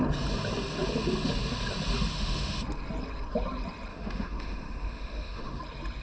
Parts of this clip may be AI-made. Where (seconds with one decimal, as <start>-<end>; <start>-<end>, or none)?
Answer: 2.1-2.6; 3.9-5.6